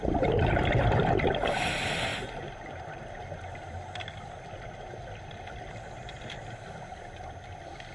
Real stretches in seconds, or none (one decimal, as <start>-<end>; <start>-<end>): 0.0-7.9